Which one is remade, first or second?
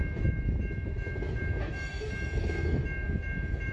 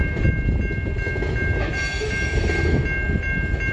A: first